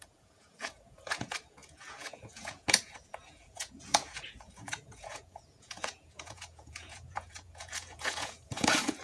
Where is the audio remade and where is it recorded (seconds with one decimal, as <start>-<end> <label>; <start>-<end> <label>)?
0.0-9.0 remade